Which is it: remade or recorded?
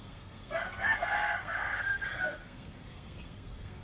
remade